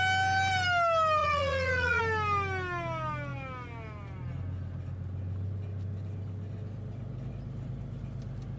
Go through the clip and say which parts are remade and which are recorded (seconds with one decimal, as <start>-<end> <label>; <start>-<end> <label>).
0.0-1.2 recorded; 1.2-2.0 remade; 2.0-8.6 recorded